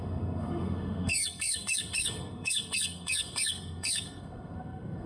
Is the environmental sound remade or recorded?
remade